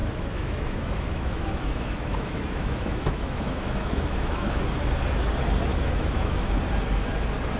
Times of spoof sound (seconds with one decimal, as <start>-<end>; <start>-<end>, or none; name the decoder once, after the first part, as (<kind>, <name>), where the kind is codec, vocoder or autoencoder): 0.0-4.6 (autoencoder, DAC-VAE); 5.7-6.6